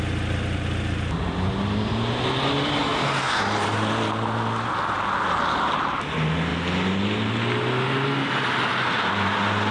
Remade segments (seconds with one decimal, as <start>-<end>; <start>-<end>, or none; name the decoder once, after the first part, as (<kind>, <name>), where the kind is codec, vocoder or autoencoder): none